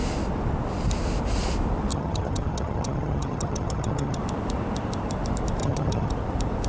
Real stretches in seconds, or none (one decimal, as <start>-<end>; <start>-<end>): 0.0-1.9; 4.2-5.6; 6.1-6.7